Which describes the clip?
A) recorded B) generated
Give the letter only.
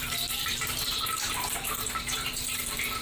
B